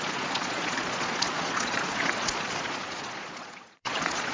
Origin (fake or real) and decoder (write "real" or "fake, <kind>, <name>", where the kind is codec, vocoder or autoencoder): fake, vocoder, Vocos